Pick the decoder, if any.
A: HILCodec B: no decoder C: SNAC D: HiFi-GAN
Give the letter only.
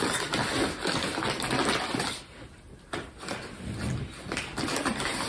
B